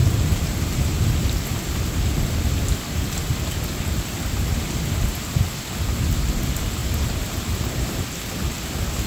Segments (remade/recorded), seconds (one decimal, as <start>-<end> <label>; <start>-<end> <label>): 0.0-1.3 remade; 1.3-6.8 recorded; 6.8-7.7 remade; 7.7-9.1 recorded